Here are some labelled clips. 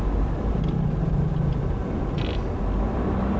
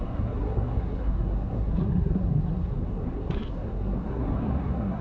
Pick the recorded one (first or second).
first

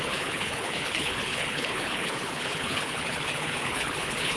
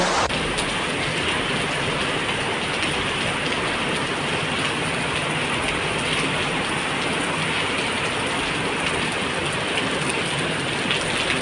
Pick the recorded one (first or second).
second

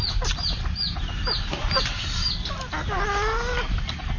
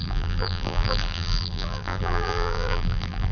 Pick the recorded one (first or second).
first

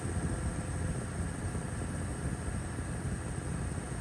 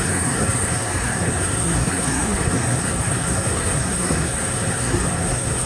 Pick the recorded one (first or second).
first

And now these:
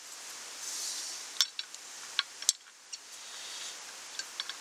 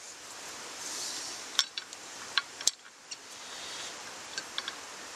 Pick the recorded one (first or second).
first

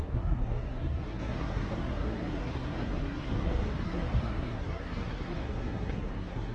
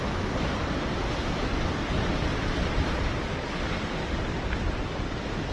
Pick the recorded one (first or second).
second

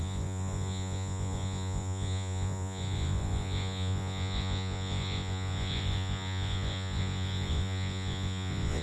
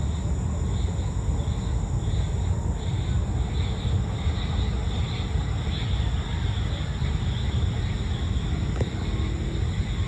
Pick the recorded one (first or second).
second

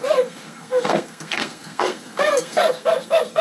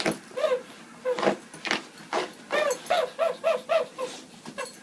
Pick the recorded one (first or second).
second